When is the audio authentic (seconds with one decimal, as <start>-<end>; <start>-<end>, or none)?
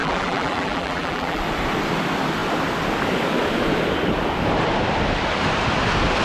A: 1.4-6.2